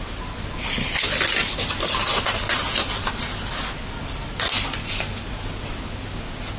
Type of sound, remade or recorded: recorded